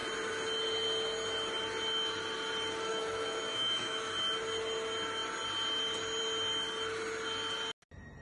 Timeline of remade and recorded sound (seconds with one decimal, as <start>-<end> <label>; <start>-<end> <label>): 0.0-2.9 recorded; 2.9-4.1 remade; 4.1-8.2 recorded

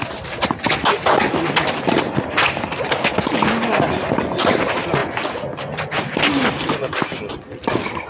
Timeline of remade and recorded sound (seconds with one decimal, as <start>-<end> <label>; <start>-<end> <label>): 0.0-8.1 recorded